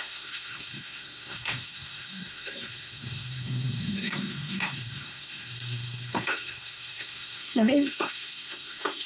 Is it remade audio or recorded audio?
remade